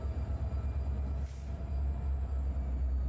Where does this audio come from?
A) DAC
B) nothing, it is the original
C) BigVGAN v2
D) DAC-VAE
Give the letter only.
B